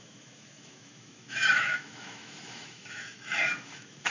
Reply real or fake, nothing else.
fake